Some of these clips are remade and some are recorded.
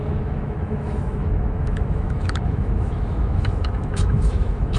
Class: remade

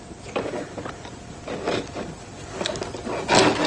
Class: recorded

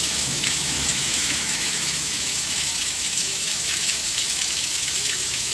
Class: remade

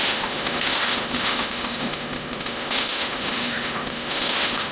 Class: remade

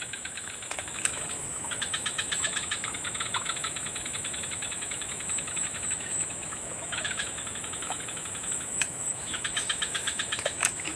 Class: remade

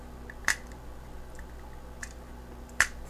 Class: recorded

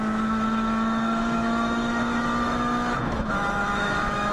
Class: remade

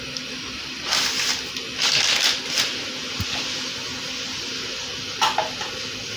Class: recorded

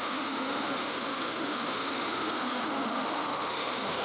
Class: remade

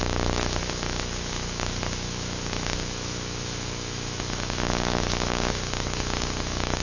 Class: remade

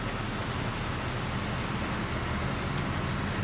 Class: recorded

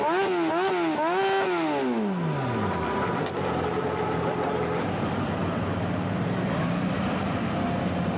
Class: recorded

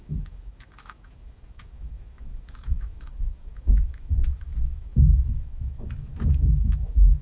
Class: remade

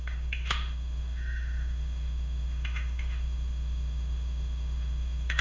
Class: remade